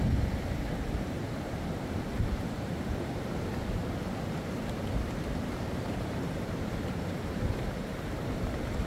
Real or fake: fake